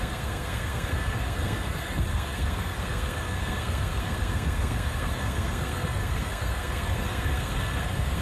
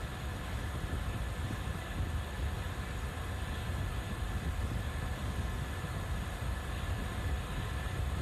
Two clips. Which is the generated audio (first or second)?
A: first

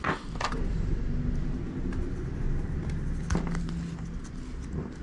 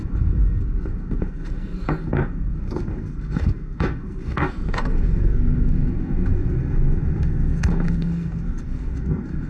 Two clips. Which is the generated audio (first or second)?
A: second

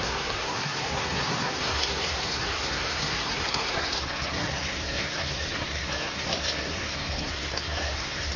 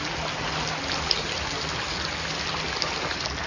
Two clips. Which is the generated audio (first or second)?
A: first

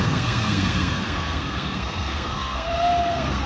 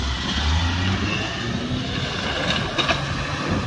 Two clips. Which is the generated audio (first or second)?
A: first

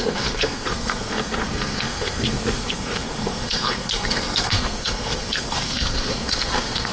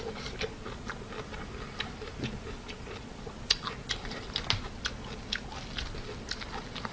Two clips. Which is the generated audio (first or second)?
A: first